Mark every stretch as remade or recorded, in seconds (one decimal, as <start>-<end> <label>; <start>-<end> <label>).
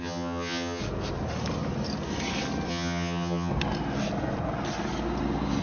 0.0-0.8 remade; 0.8-2.7 recorded; 2.7-3.5 remade; 3.5-5.6 recorded